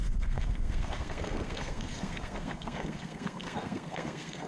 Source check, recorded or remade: remade